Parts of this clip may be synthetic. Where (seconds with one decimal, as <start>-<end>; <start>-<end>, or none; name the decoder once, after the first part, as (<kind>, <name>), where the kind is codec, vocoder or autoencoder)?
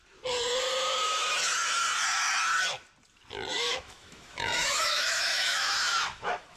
3.5-6.6 (autoencoder, DAC-VAE)